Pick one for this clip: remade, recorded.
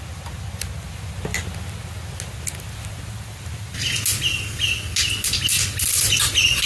recorded